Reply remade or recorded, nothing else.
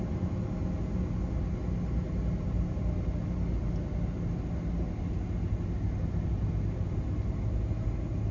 recorded